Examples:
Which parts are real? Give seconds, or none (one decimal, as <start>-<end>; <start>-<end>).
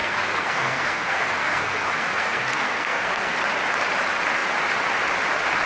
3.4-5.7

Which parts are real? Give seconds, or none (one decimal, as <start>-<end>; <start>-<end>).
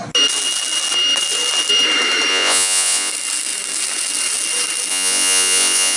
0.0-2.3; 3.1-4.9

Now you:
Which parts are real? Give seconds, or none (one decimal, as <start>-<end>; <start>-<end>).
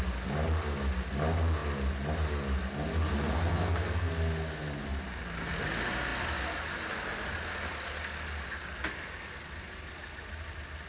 0.0-3.5; 4.1-10.9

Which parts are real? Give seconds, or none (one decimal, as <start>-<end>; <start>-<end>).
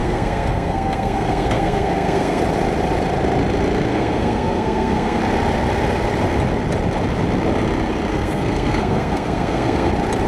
2.4-3.9; 5.2-8.1; 9.9-10.3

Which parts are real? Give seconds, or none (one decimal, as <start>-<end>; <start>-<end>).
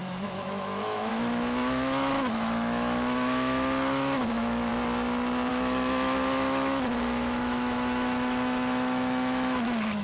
4.7-5.5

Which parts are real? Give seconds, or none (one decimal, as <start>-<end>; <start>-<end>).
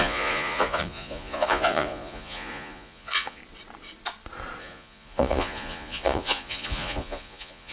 3.4-4.6